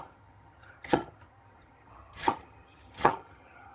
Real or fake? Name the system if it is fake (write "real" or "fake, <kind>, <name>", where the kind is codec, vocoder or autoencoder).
fake, vocoder, HiFi-GAN